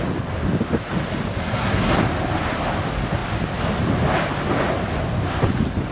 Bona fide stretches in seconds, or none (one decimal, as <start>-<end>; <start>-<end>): 0.0-1.4; 1.9-5.9